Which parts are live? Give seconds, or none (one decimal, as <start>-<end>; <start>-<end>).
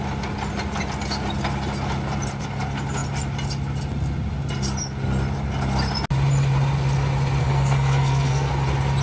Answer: 0.0-7.4; 8.5-9.0